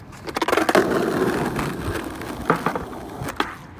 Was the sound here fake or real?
real